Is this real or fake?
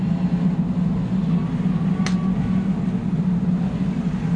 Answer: real